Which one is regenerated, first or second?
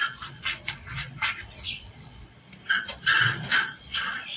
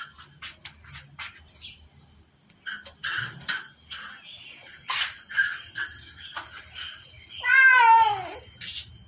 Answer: first